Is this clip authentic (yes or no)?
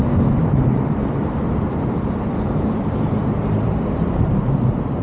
no